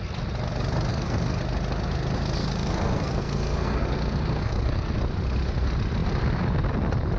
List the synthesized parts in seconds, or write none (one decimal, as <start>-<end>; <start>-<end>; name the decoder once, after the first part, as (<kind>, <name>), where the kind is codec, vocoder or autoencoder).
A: 0.9-1.4 (codec, SNAC); 2.4-5.0